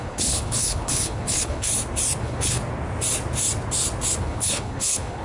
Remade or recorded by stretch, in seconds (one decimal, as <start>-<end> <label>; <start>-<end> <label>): 0.0-1.7 remade; 1.7-2.2 recorded; 2.2-2.6 remade; 2.6-4.2 recorded; 4.2-5.2 remade